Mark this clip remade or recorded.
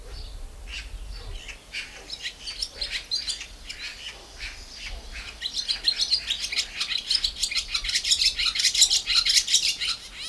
recorded